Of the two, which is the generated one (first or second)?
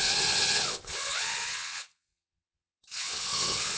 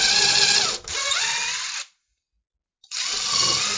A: first